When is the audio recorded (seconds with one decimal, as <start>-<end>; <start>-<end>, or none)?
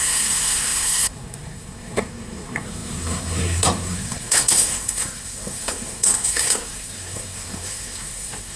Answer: none